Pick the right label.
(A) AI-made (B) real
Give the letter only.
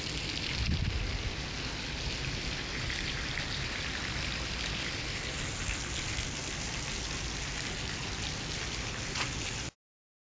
B